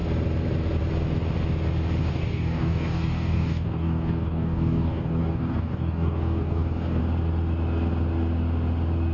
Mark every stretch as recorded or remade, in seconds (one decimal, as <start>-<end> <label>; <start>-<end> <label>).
0.0-2.0 recorded; 2.0-7.0 remade; 7.0-9.1 recorded